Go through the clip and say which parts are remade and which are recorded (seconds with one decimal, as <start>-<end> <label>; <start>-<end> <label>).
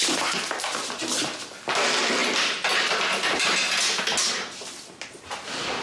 0.0-5.8 recorded